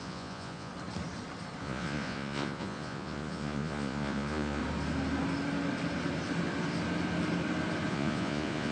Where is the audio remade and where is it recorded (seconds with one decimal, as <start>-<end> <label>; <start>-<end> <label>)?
0.0-0.7 remade; 0.7-1.6 recorded; 1.6-4.6 remade; 4.6-7.9 recorded; 7.9-8.7 remade

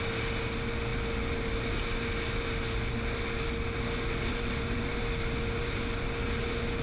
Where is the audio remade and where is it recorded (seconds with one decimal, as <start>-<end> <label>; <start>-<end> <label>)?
0.0-6.8 recorded